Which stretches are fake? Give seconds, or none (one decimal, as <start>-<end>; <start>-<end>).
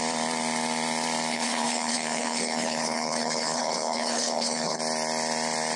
1.3-4.8